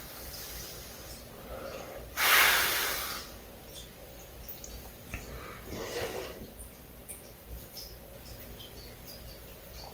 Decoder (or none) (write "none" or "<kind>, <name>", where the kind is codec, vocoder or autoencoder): vocoder, BigVGAN v2